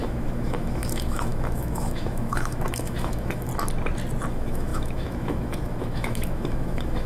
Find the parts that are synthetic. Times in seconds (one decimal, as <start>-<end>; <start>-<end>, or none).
0.0-3.5; 4.3-7.1